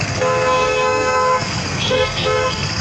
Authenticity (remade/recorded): remade